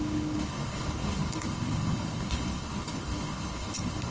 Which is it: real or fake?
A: fake